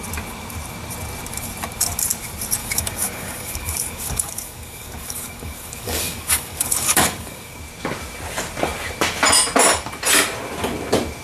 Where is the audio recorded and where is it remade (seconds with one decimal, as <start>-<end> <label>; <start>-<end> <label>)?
0.0-2.6 recorded; 2.6-7.6 remade; 7.6-11.2 recorded